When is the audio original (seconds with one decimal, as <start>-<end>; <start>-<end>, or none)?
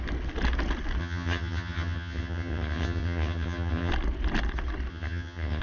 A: 0.0-1.0; 3.9-4.9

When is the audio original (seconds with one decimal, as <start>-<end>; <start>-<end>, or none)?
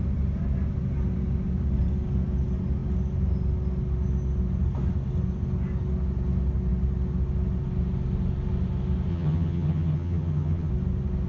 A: 0.0-9.1; 10.7-11.3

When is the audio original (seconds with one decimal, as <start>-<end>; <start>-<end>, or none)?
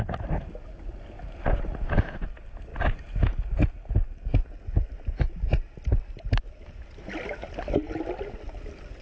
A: 0.0-9.0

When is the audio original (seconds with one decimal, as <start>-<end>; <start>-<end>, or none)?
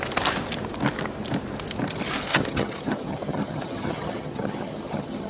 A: 0.0-2.3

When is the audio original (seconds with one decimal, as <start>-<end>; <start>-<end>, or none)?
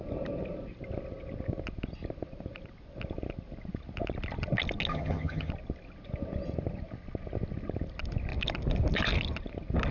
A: 0.0-4.9; 5.5-9.9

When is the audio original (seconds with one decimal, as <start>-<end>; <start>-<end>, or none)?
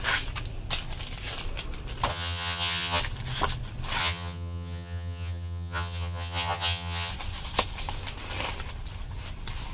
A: 0.0-2.1; 3.0-4.0; 7.1-9.7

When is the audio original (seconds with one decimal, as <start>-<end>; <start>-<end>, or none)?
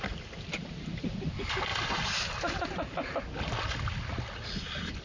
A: 0.0-5.0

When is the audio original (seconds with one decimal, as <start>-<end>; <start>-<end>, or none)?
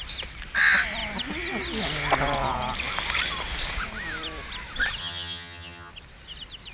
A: 0.0-5.0; 5.9-6.7